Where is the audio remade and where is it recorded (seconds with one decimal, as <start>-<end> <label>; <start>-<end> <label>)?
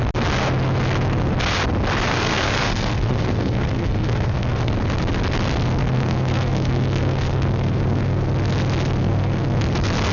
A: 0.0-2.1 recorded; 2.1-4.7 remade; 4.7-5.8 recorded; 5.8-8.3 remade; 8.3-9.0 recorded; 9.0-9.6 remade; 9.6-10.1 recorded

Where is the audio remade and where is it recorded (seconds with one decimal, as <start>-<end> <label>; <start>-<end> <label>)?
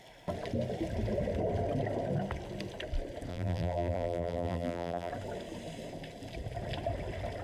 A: 0.0-3.3 recorded; 3.3-5.1 remade; 5.1-7.4 recorded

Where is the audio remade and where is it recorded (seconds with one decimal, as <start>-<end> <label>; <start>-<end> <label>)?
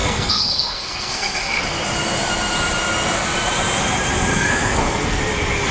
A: 0.0-1.6 remade; 1.6-4.3 recorded; 4.3-5.2 remade; 5.2-5.7 recorded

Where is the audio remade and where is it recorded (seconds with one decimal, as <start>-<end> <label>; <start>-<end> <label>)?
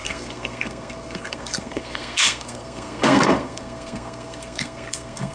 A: 0.0-5.3 remade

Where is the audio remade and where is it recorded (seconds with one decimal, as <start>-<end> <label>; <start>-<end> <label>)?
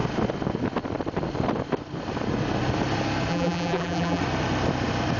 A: 0.0-3.3 recorded; 3.3-4.2 remade; 4.2-5.2 recorded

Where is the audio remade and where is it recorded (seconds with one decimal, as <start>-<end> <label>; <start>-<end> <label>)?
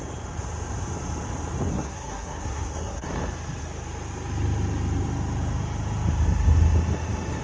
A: 0.0-1.7 recorded; 1.7-3.1 remade; 3.1-7.4 recorded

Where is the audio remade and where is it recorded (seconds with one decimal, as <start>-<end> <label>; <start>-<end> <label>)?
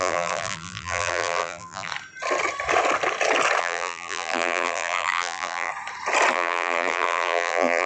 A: 0.0-1.9 remade; 1.9-3.6 recorded; 3.6-5.7 remade; 5.7-6.3 recorded; 6.3-7.9 remade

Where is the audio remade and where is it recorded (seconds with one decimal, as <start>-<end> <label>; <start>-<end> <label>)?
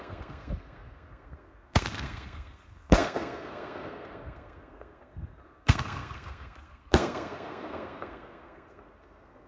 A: 0.0-9.5 remade